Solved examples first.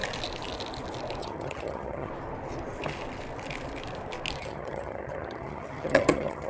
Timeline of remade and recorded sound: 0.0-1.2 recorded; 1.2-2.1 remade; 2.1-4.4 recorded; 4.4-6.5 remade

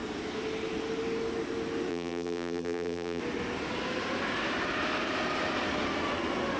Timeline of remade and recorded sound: 0.0-1.9 recorded; 1.9-3.2 remade; 3.2-6.6 recorded

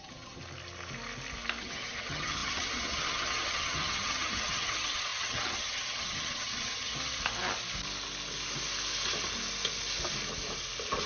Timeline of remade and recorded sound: 0.0-0.4 remade; 0.4-1.6 recorded; 1.6-6.9 remade; 6.9-11.1 recorded

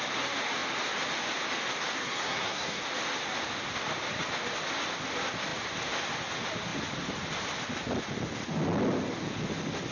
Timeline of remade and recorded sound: 0.0-2.0 recorded; 2.0-2.8 remade; 2.8-9.9 recorded

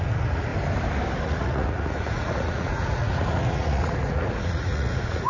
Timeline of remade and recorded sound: 0.0-0.5 remade; 0.5-1.2 recorded; 1.2-5.3 remade

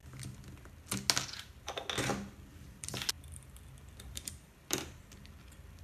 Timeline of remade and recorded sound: 0.0-2.5 recorded; 2.5-5.0 remade; 5.0-5.8 recorded